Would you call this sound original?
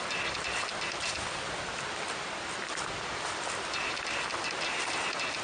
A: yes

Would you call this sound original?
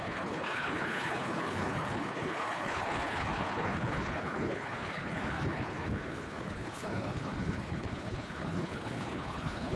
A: no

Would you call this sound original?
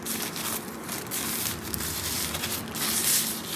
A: yes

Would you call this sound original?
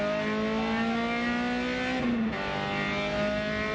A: yes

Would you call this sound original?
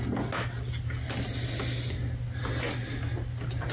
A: yes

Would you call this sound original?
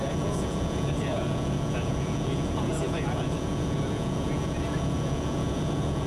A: no